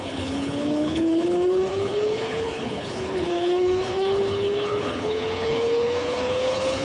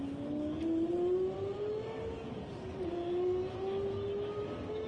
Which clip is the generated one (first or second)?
first